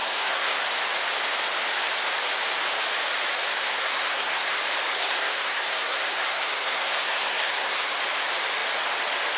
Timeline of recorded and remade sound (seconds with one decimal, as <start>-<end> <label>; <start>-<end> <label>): 0.0-0.6 remade; 0.6-3.7 recorded; 3.7-4.6 remade; 4.6-5.0 recorded; 5.0-8.0 remade; 8.0-9.4 recorded